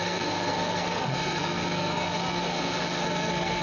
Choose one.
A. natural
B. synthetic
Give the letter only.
B